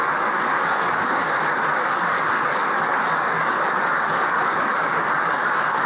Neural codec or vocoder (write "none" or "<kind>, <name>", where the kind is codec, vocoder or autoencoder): codec, DAC